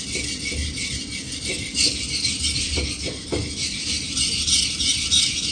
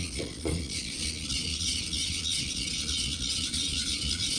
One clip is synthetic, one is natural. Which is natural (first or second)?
first